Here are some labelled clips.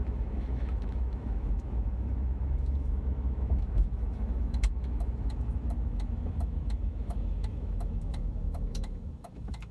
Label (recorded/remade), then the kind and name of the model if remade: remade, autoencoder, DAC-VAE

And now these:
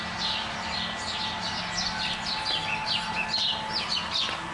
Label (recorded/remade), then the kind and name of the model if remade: recorded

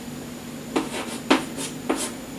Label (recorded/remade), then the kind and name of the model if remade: recorded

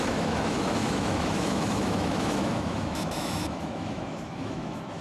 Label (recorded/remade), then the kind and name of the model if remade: remade, autoencoder, DAC-VAE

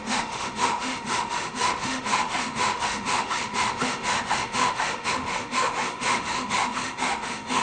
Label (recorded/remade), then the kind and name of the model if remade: remade, autoencoder, DAC-VAE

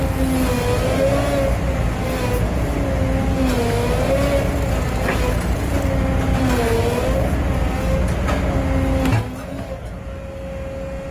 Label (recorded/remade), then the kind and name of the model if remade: recorded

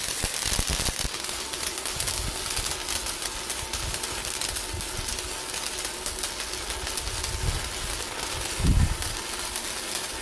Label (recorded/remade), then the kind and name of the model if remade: recorded